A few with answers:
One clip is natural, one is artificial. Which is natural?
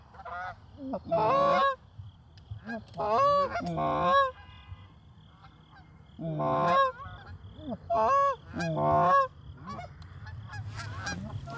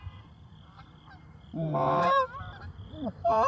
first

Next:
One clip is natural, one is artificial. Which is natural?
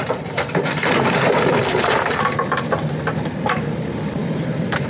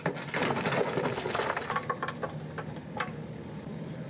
second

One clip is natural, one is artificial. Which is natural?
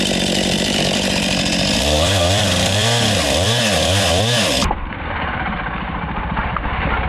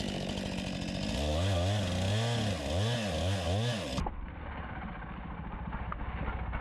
second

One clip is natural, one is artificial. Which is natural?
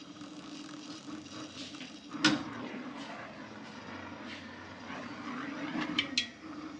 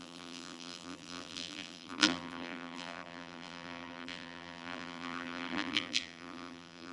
first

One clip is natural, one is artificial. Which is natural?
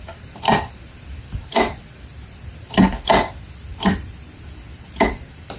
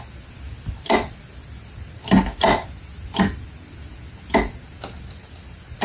second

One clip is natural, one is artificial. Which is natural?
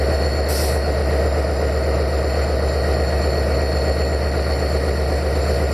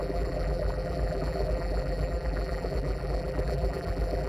first